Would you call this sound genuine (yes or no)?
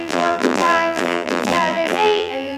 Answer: no